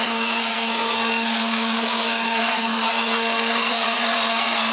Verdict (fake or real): fake